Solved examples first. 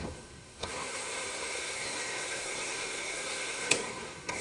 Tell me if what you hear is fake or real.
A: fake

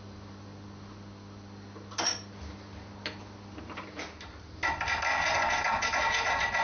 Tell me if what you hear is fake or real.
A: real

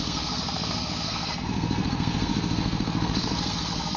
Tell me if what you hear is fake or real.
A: fake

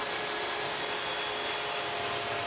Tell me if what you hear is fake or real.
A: real